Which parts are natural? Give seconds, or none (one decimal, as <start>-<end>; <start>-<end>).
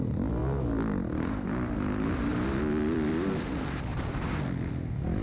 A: 0.0-2.3; 3.4-3.9; 4.7-5.2